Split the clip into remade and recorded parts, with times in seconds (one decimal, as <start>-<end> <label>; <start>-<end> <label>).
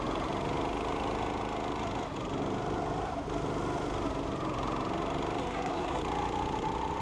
0.0-5.4 recorded; 5.4-6.0 remade; 6.0-7.0 recorded